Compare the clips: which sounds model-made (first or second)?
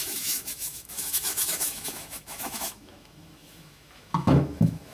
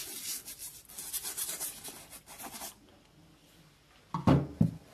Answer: first